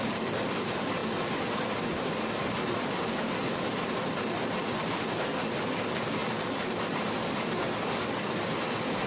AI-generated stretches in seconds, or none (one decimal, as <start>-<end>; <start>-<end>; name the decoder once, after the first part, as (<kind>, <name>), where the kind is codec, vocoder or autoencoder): none